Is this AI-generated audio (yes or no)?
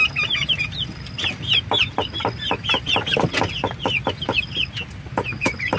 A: no